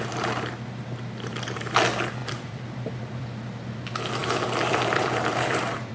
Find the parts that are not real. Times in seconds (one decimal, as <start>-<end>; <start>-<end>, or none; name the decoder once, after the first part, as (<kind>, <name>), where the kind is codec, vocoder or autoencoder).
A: 2.2-3.2 (vocoder, BigVGAN v2); 4.2-5.9